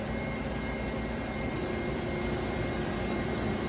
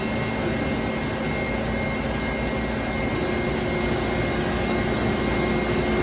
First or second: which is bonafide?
second